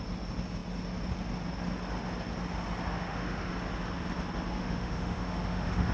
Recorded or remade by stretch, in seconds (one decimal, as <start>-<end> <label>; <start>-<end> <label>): 0.0-2.9 recorded; 2.9-3.5 remade; 3.5-4.6 recorded; 4.6-5.9 remade